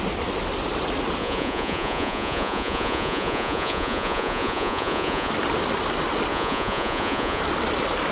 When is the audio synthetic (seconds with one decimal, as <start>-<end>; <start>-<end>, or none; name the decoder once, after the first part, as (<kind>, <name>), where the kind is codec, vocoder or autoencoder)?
1.2-5.3 (vocoder, Vocos); 6.3-7.4